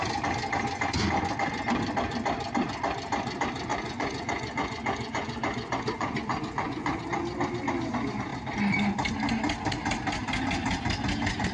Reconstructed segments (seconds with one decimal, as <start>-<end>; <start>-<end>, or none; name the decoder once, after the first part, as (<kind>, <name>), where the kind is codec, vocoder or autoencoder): 3.7-7.0 (vocoder, Vocos)